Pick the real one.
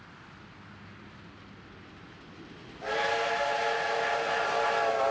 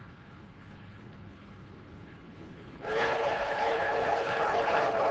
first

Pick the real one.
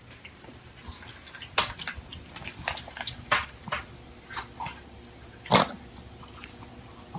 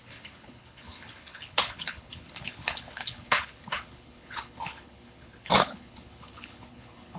first